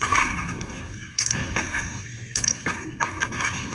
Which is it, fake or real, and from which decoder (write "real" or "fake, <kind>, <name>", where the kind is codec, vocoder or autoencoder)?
fake, codec, SNAC